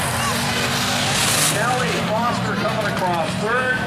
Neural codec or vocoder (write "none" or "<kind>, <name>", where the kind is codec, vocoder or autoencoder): none